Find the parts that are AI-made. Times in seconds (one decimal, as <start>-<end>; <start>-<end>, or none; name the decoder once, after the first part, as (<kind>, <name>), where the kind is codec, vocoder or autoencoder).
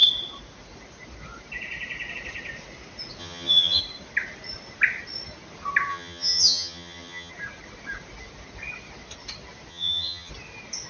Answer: 3.2-3.8 (vocoder, HiFi-GAN); 5.9-7.3; 9.7-10.3